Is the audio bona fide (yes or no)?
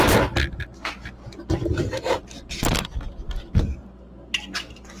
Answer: yes